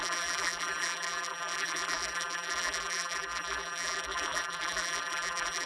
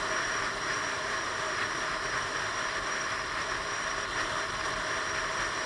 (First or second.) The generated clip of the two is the first